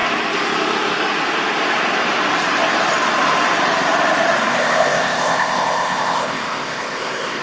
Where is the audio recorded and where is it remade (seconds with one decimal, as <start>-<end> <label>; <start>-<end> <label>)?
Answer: 0.0-4.5 recorded; 4.5-7.4 remade